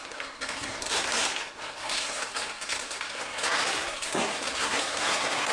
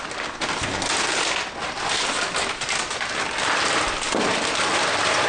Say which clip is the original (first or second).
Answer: second